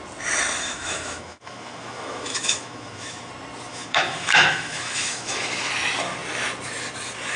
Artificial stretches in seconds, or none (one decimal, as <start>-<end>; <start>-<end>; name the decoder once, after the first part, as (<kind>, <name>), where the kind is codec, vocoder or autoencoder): 0.6-3.3 (autoencoder, DAC-VAE); 3.7-5.7